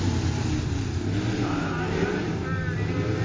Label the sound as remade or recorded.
recorded